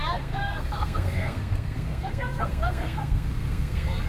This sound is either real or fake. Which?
fake